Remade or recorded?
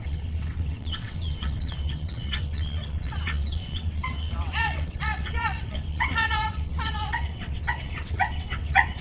remade